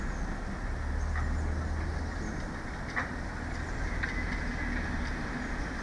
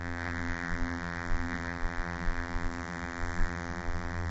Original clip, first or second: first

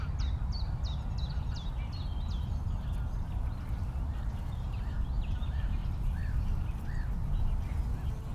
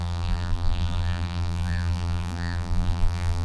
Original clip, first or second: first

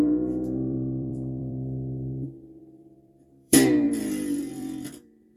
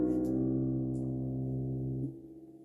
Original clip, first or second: second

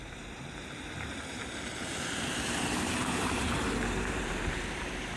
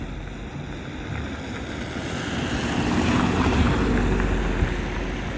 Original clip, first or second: second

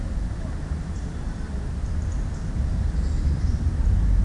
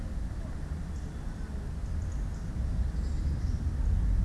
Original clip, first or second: second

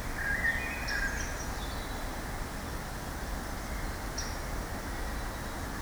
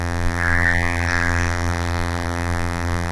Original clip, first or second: first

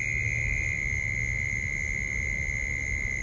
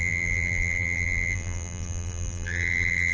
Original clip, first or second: first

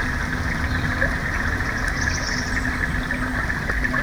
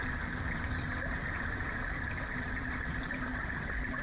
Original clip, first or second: first